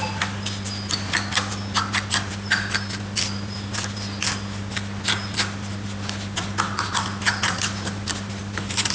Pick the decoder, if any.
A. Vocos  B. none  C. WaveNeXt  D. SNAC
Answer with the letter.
B